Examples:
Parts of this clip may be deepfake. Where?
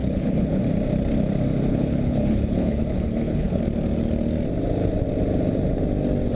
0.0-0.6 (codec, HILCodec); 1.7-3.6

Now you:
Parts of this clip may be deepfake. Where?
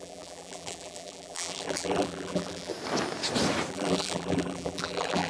0.0-2.7 (vocoder, BigVGAN v2); 3.7-5.3